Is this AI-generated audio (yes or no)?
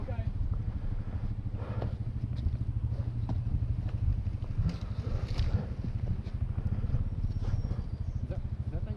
no